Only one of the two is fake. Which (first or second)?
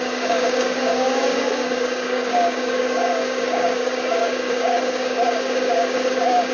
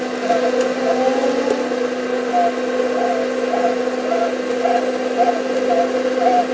first